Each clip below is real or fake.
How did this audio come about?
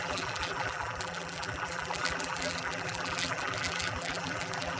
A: fake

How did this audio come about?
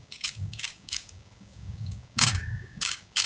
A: fake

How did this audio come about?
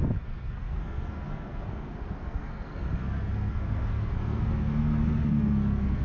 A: fake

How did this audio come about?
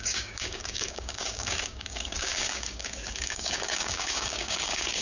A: fake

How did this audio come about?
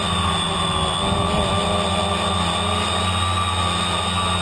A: real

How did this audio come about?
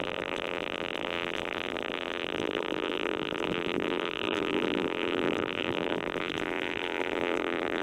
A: fake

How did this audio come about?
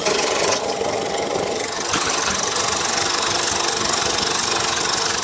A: fake